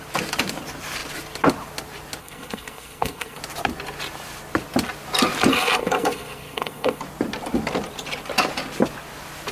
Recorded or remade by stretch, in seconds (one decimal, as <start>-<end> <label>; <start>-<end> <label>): 0.0-2.2 recorded; 2.2-3.4 remade; 3.4-5.5 recorded; 5.5-7.0 remade; 7.0-9.5 recorded